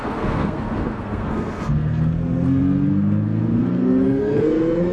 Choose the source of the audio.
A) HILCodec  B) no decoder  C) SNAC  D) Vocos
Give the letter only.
C